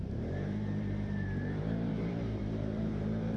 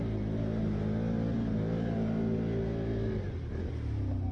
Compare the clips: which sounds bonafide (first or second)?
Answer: second